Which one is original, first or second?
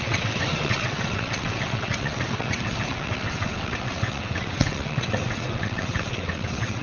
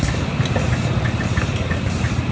second